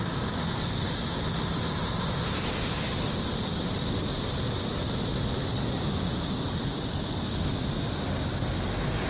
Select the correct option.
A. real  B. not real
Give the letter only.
A